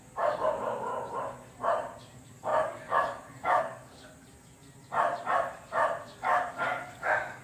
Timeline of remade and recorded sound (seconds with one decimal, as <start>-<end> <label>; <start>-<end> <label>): 0.0-0.9 remade; 0.9-2.0 recorded; 2.0-4.1 remade; 4.1-6.5 recorded; 6.5-7.4 remade